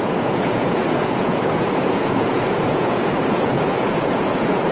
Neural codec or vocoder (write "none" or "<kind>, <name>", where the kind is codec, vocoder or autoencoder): vocoder, Vocos